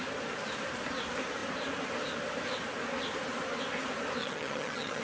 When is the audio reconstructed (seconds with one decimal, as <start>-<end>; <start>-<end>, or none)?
4.2-5.0